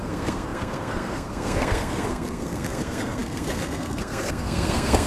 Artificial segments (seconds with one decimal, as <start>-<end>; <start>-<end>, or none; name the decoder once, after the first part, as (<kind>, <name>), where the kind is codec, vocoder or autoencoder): 0.0-5.1 (codec, SNAC)